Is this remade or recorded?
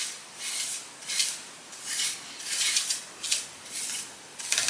recorded